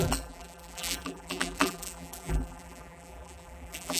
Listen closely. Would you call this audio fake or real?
fake